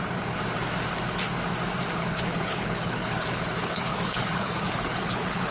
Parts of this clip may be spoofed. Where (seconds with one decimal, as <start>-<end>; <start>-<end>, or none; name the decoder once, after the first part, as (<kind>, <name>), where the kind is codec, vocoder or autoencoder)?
2.0-5.5 (codec, HILCodec)